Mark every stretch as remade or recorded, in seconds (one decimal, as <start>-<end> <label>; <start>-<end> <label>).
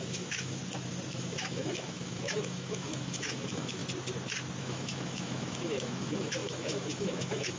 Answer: 0.0-0.6 remade; 0.6-1.1 recorded; 1.1-3.8 remade; 3.8-4.6 recorded; 4.6-7.6 remade